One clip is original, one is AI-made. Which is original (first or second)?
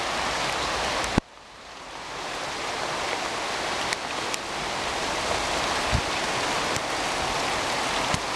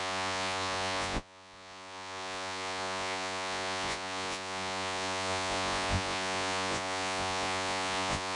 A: first